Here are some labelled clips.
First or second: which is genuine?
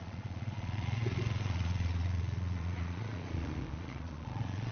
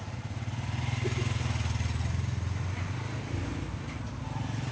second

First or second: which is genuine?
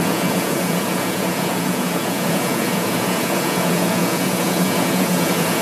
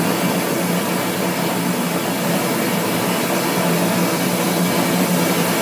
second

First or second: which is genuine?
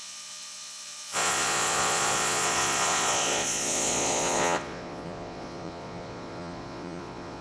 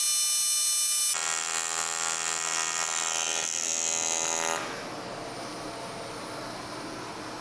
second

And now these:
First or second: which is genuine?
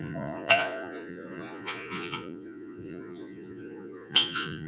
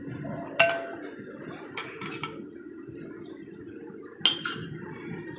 second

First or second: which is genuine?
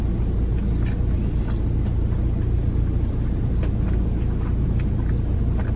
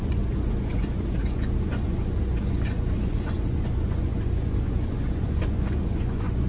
first